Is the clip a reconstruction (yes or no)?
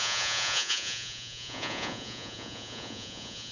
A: yes